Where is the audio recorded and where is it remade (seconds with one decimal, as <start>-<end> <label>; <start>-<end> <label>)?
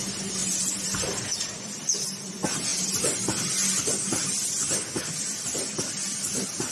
0.0-6.7 recorded